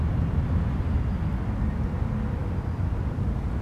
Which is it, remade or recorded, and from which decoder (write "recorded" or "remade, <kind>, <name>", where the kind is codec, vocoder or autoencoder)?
recorded